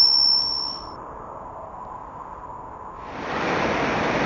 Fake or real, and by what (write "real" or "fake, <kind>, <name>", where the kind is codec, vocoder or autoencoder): real